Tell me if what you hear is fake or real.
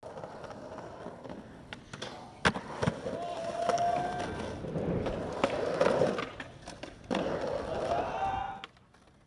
real